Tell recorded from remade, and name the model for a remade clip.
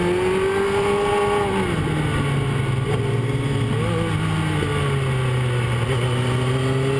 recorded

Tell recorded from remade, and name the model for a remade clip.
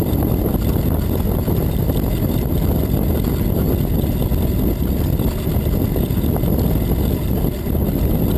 recorded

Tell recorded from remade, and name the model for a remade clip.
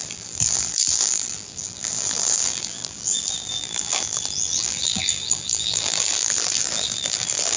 remade, vocoder, BigVGAN v2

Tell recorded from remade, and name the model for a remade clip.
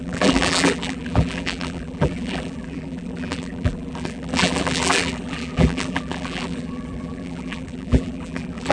remade, vocoder, BigVGAN v2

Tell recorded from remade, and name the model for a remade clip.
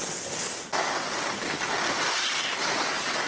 recorded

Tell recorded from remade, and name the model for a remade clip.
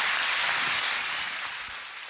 recorded